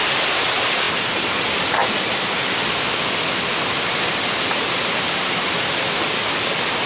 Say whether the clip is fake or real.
real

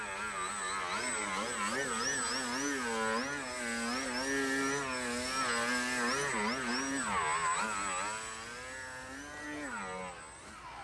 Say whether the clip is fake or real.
real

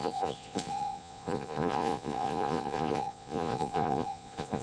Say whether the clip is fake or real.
fake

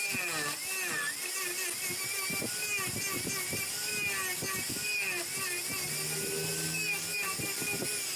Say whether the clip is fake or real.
real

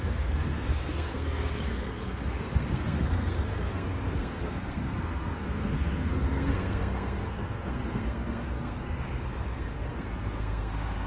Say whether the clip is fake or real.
fake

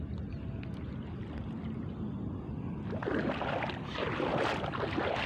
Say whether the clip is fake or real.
real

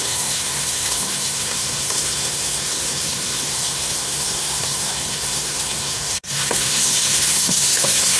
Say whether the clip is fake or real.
fake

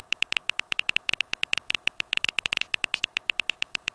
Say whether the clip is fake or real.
fake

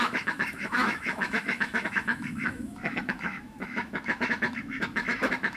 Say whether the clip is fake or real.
fake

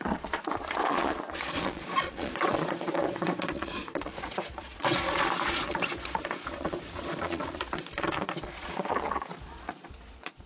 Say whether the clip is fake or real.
fake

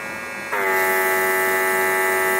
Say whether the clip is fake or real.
real